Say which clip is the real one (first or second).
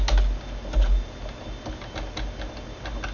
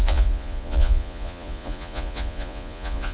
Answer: first